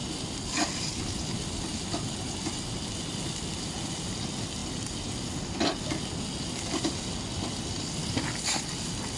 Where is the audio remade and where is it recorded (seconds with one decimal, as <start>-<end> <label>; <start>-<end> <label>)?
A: 0.0-9.2 recorded